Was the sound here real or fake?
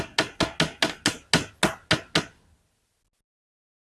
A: real